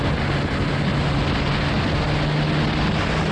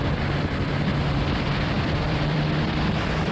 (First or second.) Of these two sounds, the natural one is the first